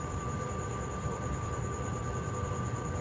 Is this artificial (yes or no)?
yes